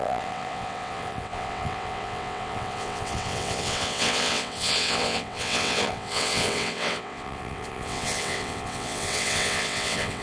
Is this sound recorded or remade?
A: remade